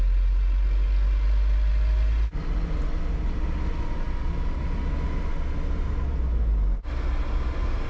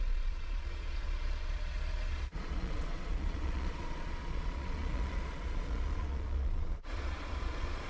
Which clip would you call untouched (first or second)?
first